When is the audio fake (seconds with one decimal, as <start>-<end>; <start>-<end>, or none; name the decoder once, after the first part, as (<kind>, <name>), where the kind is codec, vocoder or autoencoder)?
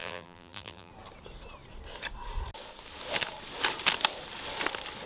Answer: 0.0-0.9 (vocoder, BigVGAN v2)